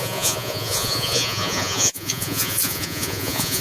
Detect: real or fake fake